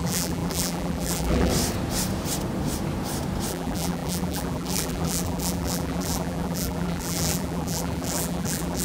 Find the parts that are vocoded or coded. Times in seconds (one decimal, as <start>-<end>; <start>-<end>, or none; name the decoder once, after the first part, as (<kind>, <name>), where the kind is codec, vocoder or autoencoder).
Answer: 0.0-1.5 (vocoder, BigVGAN v2); 3.5-8.8